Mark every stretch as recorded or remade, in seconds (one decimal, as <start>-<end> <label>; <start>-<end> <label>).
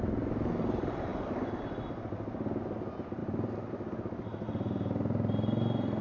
0.0-6.0 recorded